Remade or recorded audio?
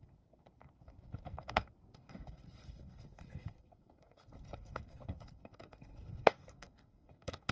remade